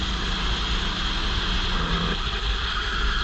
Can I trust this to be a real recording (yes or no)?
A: yes